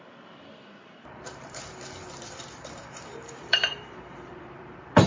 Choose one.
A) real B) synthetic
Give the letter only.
B